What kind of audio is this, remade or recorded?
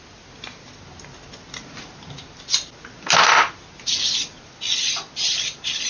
recorded